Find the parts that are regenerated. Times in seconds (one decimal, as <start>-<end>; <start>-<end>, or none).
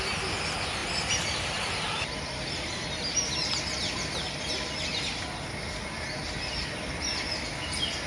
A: none